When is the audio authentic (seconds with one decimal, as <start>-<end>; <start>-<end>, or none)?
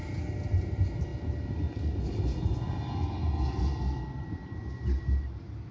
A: 0.0-5.7